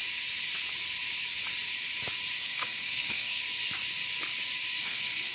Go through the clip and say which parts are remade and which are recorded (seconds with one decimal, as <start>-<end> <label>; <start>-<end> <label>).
0.0-2.4 recorded; 2.4-3.4 remade; 3.4-4.8 recorded; 4.8-5.3 remade